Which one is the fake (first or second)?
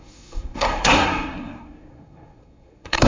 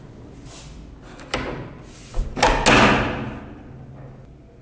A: first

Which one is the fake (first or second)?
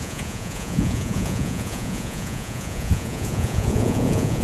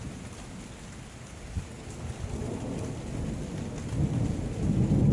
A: first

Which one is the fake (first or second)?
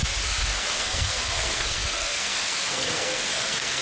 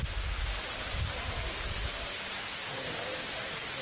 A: first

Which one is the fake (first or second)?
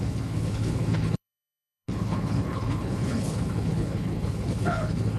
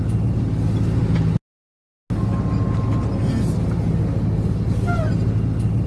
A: first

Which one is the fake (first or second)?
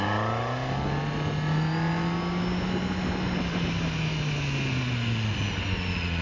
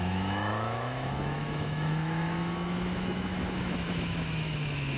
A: second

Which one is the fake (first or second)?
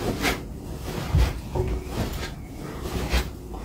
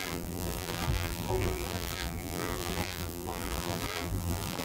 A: second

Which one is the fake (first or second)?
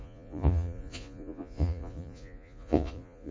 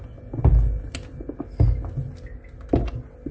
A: first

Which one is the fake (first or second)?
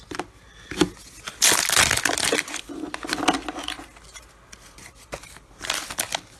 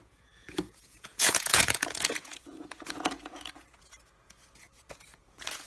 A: second